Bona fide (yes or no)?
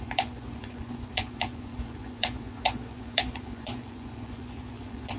no